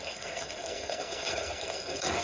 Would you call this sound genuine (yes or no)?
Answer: no